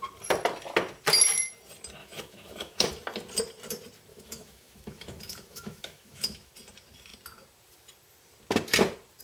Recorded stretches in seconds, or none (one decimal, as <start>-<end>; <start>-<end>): 0.0-2.0; 2.9-4.1; 6.5-9.2